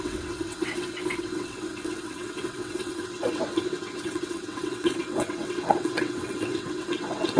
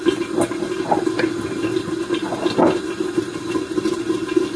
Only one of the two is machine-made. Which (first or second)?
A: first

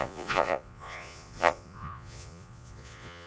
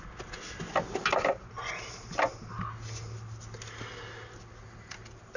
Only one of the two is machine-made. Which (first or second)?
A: first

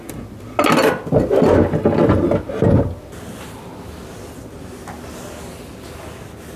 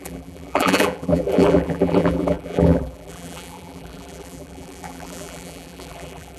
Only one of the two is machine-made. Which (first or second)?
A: second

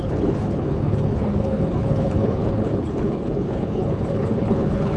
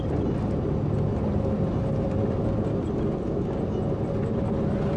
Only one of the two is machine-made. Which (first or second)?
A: first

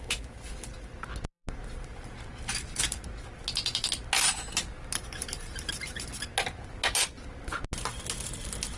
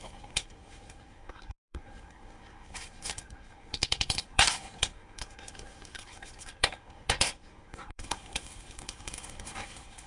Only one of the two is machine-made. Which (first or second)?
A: second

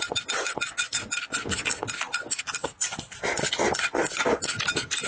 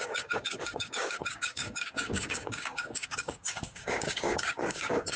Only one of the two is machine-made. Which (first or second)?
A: second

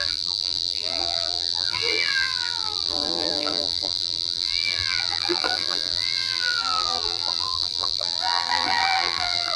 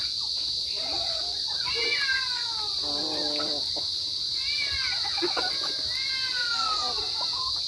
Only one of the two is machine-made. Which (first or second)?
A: first